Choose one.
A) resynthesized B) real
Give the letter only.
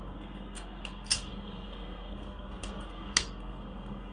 A